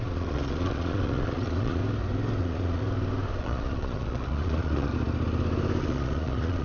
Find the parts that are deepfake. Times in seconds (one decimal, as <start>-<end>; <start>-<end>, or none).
0.0-1.8; 2.4-2.8; 3.4-4.9; 5.8-6.6